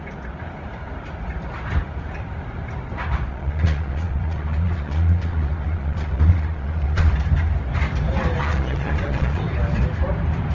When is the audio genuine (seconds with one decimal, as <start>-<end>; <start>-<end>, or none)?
0.0-3.3; 7.1-8.4; 9.4-10.5